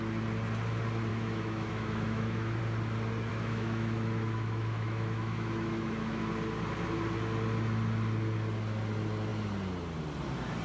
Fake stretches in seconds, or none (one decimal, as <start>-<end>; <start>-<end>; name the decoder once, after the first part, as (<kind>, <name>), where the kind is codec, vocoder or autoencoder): 1.1-2.6 (autoencoder, DAC-VAE); 3.3-6.3